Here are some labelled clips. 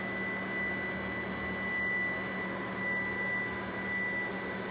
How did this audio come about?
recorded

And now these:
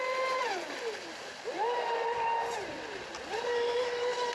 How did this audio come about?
recorded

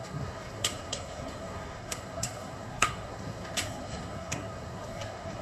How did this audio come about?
remade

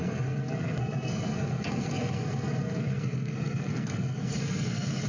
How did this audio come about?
remade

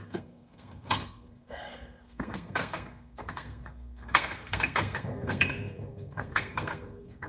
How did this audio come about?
remade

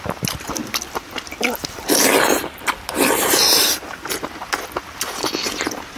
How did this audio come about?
recorded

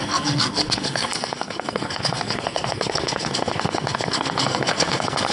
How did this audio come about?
remade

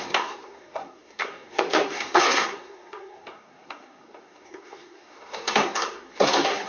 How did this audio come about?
remade